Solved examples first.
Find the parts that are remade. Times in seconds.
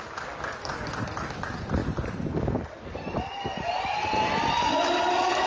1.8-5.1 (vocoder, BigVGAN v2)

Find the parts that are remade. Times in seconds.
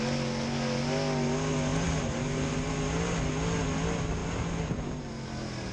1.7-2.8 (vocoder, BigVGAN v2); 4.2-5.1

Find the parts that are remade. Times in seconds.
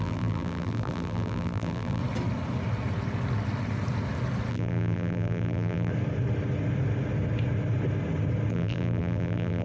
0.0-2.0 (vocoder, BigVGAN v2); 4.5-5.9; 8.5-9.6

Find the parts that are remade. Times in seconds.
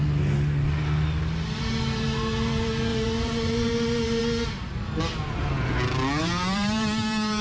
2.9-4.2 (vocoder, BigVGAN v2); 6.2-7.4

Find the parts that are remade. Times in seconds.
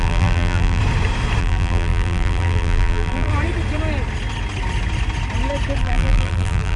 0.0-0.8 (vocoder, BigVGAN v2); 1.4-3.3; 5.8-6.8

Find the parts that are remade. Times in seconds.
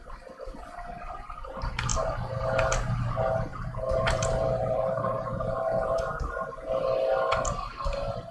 3.5-6.0 (vocoder, BigVGAN v2)